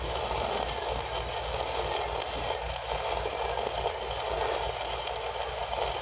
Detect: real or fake real